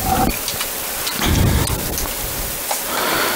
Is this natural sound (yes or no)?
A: yes